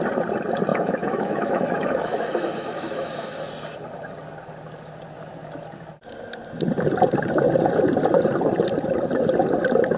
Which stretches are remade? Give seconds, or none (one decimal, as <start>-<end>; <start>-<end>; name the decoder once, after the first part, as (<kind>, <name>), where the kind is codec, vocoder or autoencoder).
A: 0.7-3.5 (autoencoder, DAC-VAE)